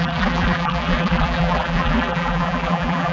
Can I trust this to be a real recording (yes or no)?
no